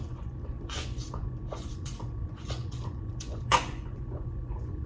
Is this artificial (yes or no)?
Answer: yes